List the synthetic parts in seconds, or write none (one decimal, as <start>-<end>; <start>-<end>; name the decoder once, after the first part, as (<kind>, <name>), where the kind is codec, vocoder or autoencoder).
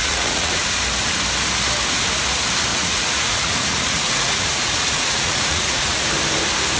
0.0-0.6 (vocoder, Vocos); 2.7-6.0